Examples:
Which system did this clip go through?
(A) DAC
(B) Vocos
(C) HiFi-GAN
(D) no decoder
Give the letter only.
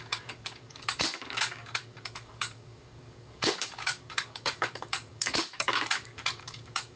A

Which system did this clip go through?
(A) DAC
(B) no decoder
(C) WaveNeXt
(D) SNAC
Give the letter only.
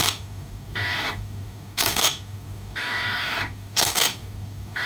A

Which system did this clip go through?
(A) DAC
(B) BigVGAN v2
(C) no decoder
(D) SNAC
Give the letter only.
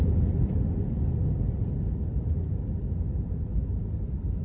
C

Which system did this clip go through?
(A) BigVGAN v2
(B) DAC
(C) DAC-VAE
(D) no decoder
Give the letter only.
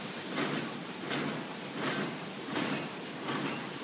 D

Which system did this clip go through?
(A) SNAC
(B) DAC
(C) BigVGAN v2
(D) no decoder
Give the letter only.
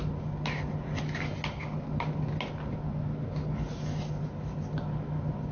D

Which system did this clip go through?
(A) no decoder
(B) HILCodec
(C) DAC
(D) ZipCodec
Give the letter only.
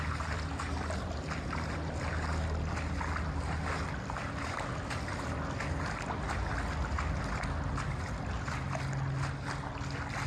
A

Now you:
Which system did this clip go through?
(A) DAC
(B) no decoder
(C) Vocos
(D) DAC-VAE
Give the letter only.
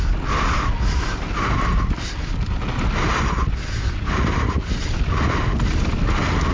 B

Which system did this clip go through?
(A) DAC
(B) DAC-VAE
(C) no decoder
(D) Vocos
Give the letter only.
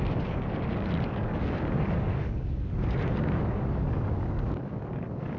A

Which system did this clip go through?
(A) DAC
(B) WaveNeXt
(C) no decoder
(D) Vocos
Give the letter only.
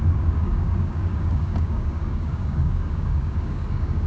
A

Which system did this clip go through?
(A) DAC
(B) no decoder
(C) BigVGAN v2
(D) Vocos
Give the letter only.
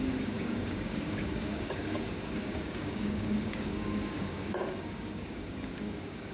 A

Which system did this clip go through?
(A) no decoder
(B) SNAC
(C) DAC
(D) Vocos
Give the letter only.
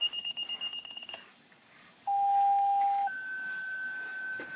C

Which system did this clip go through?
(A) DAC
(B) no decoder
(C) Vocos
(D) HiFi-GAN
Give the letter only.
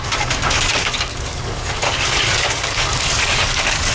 A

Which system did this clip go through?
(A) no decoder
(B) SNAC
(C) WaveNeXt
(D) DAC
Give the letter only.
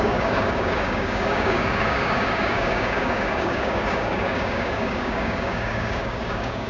D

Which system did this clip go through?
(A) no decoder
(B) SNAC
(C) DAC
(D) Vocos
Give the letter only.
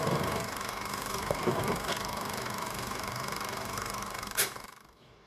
C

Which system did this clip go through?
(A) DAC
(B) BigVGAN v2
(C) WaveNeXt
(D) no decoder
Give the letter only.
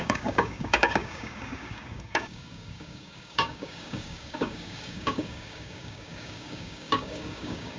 A